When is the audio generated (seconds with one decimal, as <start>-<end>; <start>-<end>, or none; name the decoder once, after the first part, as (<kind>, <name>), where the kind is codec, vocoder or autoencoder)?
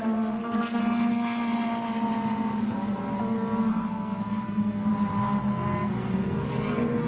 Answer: 0.0-0.8 (codec, SNAC); 3.7-4.9; 5.4-7.1